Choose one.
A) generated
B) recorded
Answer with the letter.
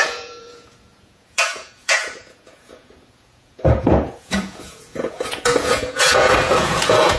A